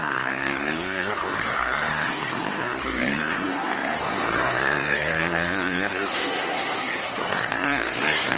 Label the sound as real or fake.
fake